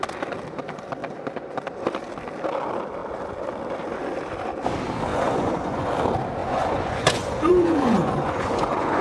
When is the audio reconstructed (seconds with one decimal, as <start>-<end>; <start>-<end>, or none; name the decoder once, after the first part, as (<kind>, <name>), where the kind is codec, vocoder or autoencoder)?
5.1-5.9 (vocoder, Vocos); 6.4-9.0